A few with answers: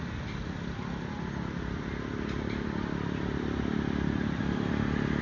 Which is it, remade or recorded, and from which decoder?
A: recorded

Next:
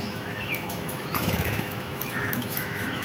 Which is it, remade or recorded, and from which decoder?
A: remade, autoencoder, DAC-VAE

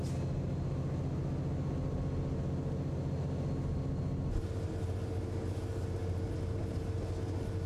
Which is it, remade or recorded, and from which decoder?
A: recorded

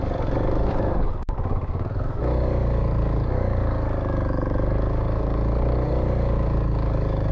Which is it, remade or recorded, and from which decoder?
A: remade, codec, DAC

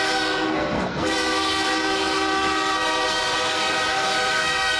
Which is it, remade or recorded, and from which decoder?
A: remade, codec, SNAC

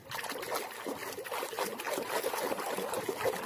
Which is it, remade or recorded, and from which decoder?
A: recorded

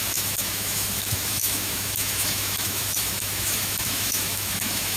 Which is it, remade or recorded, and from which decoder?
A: remade, autoencoder, DAC-VAE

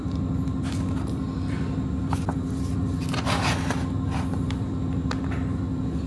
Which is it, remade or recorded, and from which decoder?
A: recorded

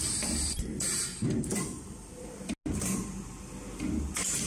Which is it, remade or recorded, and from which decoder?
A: recorded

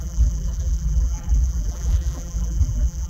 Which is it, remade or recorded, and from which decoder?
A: remade, vocoder, BigVGAN v2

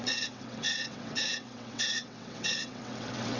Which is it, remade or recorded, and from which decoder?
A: remade, vocoder, WaveNeXt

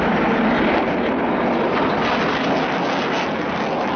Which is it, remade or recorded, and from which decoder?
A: recorded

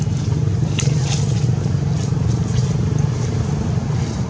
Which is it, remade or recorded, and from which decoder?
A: recorded